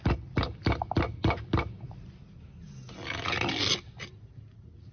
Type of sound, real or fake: real